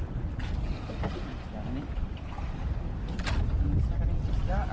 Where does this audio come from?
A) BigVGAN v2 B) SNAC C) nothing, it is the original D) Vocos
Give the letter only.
C